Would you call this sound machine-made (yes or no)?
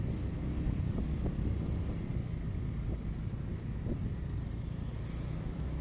no